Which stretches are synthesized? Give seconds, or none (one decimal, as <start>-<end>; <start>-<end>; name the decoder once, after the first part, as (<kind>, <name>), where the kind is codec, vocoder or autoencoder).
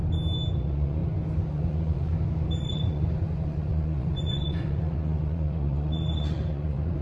0.6-1.0 (vocoder, Vocos); 1.5-2.1; 2.6-7.0